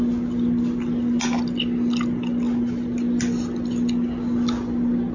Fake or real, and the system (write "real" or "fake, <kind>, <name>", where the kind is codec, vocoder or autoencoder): real